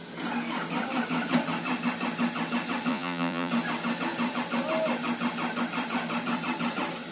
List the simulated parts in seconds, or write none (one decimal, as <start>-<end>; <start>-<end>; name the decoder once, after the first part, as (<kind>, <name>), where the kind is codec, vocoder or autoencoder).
2.9-3.5 (vocoder, Vocos)